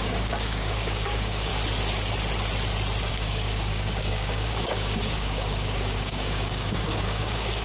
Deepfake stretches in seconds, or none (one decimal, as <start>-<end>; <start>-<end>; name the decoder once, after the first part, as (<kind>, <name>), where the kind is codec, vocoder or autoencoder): 0.0-1.5 (codec, DAC); 3.1-7.6